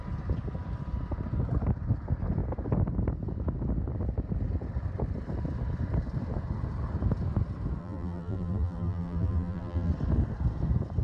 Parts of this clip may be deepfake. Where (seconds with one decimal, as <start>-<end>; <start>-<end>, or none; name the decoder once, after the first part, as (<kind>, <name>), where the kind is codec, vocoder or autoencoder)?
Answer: 7.8-9.9 (vocoder, BigVGAN v2)